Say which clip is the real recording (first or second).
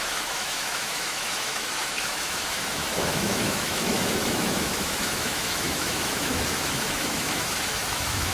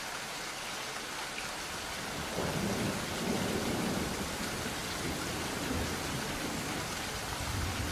second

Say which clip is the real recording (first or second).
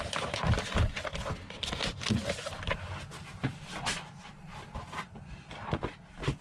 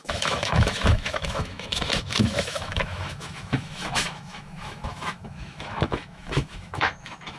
first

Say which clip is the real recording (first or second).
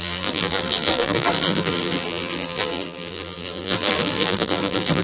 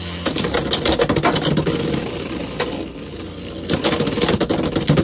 second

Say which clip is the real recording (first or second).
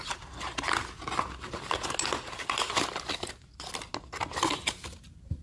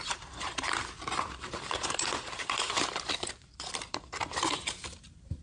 first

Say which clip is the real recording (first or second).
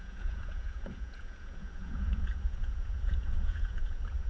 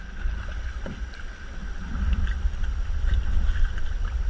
second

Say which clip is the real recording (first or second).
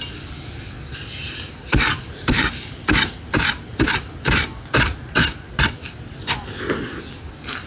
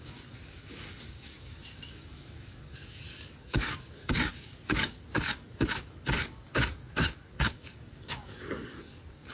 first